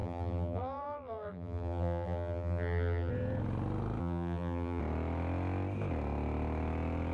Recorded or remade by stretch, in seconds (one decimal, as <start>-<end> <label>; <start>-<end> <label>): 0.0-3.1 remade; 3.1-4.0 recorded; 4.0-4.8 remade; 4.8-7.1 recorded